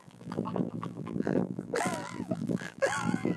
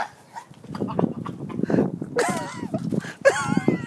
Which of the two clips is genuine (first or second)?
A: second